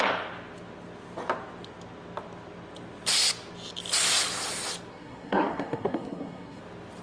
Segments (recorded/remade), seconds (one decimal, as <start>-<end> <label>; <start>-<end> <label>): 0.0-4.9 recorded; 4.9-6.6 remade; 6.6-7.0 recorded